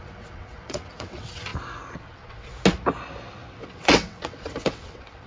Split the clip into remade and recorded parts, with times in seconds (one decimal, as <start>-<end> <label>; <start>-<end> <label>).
0.0-1.5 remade; 1.5-2.0 recorded; 2.0-2.5 remade; 2.5-3.3 recorded; 3.3-5.3 remade